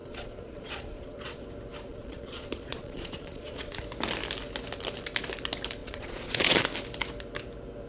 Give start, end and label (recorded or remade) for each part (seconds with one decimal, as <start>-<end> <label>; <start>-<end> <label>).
0.0-1.4 remade; 1.4-1.9 recorded; 1.9-3.8 remade; 3.8-5.8 recorded; 5.8-6.6 remade; 6.6-7.9 recorded